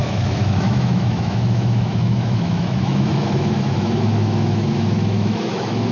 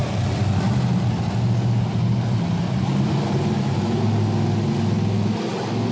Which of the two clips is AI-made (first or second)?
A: first